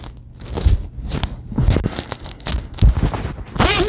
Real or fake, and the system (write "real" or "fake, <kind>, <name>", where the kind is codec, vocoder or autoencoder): real